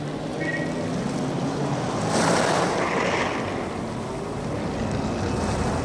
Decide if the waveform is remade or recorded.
recorded